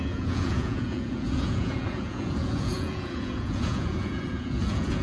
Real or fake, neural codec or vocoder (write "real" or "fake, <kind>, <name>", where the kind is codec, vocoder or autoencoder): fake, vocoder, Vocos